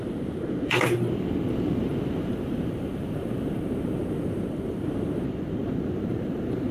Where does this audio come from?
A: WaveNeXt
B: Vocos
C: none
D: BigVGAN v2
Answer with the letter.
D